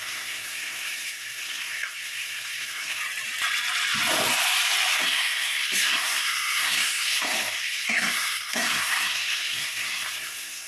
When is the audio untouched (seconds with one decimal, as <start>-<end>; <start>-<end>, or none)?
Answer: 3.0-4.9